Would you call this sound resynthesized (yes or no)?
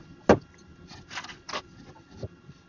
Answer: no